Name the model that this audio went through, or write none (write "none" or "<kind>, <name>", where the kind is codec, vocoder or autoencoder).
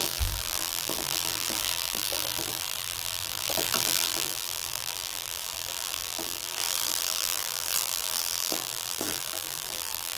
vocoder, BigVGAN v2